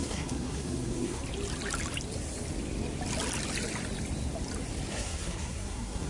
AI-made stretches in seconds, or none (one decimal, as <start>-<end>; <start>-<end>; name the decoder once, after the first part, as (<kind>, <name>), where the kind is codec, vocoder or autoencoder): 0.0-1.2 (codec, SNAC); 4.9-6.1